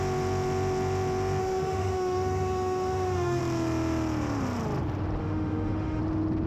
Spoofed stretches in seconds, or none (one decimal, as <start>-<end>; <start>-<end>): 1.4-3.4; 5.2-6.0